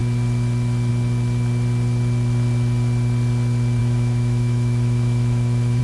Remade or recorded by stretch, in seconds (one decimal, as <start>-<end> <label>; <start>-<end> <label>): 0.0-3.8 recorded; 3.8-5.8 remade